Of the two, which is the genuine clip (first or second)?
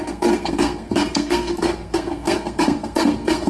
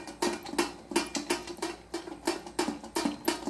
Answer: second